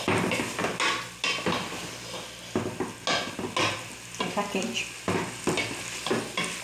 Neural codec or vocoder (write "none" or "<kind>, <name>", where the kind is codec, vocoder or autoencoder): none